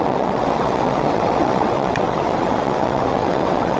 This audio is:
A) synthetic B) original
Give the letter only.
A